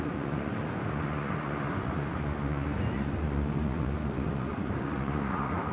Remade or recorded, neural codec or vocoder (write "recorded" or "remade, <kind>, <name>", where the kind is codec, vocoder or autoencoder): remade, vocoder, Vocos